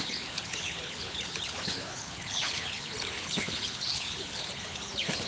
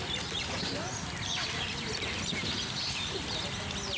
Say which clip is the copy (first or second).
first